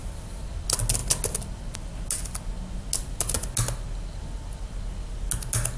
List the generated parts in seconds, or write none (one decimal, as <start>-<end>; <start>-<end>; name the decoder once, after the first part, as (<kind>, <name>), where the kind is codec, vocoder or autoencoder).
none